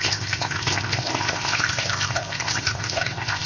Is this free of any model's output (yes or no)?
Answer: no